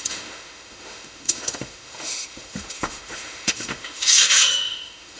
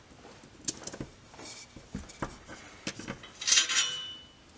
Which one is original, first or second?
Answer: second